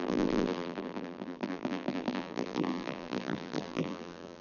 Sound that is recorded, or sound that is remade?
remade